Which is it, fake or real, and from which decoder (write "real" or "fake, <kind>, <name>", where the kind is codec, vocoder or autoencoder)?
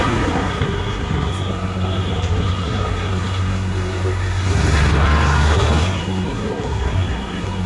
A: fake, codec, SNAC